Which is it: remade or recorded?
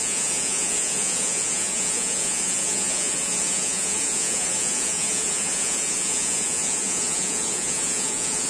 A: remade